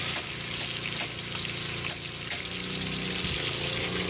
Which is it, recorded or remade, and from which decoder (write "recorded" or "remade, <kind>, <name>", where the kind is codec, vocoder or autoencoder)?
recorded